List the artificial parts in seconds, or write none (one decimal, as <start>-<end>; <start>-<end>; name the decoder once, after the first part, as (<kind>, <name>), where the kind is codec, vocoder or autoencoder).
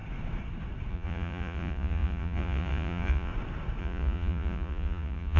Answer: 0.9-3.3 (vocoder, Vocos); 3.8-5.4